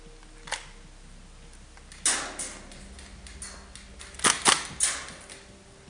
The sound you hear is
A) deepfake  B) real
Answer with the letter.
B